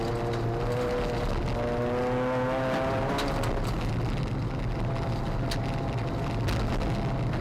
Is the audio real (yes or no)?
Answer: yes